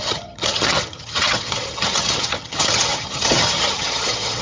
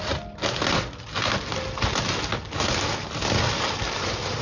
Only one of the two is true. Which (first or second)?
second